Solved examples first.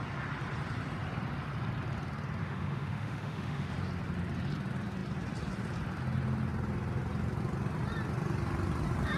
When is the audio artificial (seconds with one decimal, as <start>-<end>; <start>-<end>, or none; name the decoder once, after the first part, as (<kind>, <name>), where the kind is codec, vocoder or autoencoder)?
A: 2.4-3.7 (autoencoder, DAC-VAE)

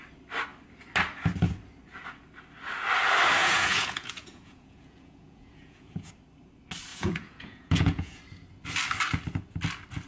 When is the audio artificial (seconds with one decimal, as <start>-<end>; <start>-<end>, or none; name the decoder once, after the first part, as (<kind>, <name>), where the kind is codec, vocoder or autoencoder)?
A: 3.4-6.1 (vocoder, Vocos); 6.9-8.2

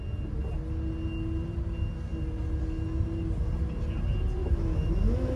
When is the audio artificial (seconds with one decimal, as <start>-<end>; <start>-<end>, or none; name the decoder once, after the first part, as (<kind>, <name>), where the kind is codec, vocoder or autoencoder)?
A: 4.4-5.4 (autoencoder, DAC-VAE)